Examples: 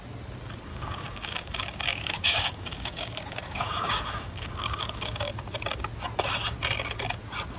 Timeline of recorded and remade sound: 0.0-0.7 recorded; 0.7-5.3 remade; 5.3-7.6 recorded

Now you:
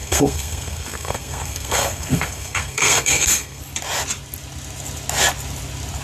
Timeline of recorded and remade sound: 0.0-3.6 remade; 3.6-6.0 recorded

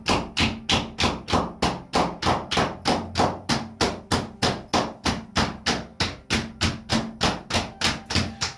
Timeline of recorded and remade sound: 0.0-8.6 recorded